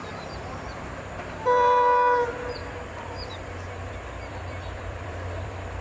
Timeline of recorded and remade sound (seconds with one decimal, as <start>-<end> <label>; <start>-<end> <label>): 0.0-5.8 remade